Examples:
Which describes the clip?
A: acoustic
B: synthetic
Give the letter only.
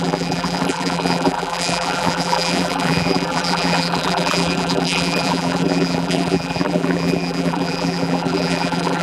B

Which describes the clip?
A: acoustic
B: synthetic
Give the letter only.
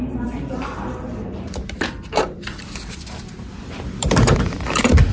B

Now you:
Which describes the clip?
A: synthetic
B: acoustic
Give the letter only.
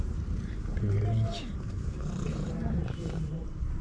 A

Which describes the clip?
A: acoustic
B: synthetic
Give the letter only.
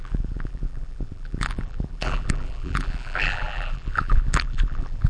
B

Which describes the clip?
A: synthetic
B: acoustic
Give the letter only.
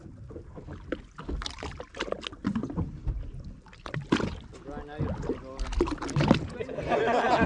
B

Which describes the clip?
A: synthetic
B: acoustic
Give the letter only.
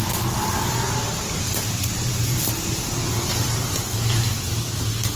A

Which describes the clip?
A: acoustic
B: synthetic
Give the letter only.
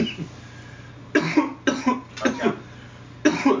A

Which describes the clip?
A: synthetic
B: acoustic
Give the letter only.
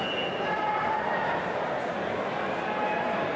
A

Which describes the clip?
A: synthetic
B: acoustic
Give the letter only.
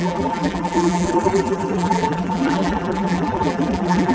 A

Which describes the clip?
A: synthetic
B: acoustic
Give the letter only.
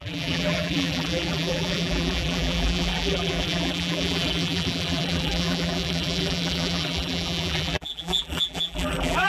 A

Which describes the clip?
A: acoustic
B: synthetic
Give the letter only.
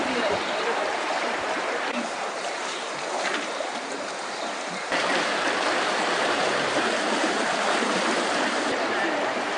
B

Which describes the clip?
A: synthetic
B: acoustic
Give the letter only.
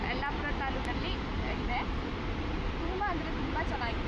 B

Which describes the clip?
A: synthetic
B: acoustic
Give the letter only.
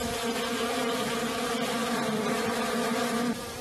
B